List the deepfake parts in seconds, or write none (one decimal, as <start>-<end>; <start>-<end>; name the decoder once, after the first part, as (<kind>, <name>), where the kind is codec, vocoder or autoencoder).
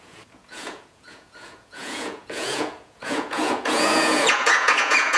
0.0-5.2 (vocoder, Vocos)